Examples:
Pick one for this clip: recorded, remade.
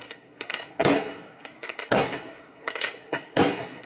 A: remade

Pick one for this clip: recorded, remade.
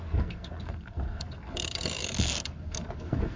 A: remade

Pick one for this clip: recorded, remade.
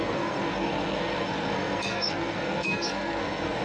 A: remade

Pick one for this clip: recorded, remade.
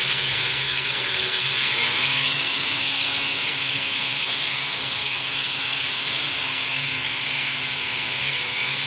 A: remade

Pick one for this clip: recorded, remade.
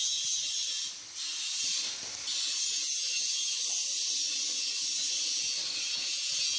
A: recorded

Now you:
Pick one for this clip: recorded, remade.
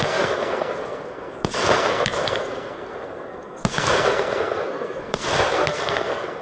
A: remade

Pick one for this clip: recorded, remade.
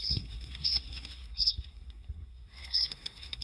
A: remade